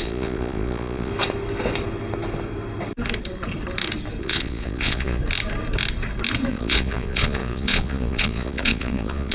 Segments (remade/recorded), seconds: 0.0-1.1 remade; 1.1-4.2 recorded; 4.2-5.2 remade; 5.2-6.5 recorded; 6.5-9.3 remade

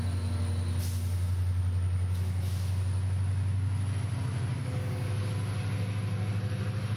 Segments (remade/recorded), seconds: 0.0-4.6 recorded; 4.6-5.3 remade; 5.3-7.0 recorded

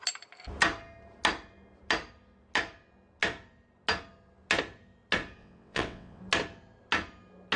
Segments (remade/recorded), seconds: 0.0-5.4 recorded; 5.4-6.2 remade; 6.2-7.6 recorded

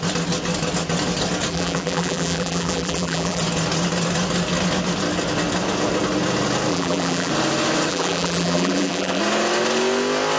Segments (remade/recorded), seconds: 0.0-1.5 recorded; 1.5-3.4 remade; 3.4-6.7 recorded; 6.7-7.3 remade; 7.3-7.9 recorded; 7.9-9.2 remade; 9.2-10.4 recorded